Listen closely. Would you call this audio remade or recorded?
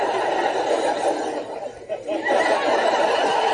recorded